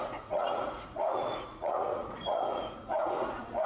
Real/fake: fake